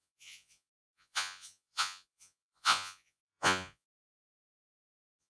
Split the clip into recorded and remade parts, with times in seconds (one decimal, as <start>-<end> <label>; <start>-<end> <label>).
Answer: 0.0-5.3 remade